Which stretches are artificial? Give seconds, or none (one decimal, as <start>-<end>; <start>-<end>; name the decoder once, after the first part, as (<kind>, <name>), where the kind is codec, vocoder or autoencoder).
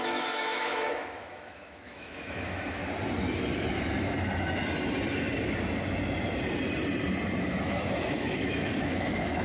0.0-2.8 (autoencoder, DAC-VAE); 7.6-9.4